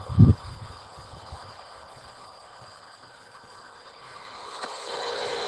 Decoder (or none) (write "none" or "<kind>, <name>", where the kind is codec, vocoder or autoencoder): codec, HILCodec